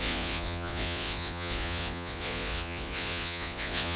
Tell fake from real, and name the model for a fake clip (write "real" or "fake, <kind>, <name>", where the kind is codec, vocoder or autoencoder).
fake, vocoder, Vocos